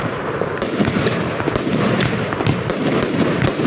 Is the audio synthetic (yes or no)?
yes